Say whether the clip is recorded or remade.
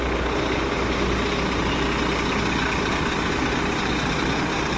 recorded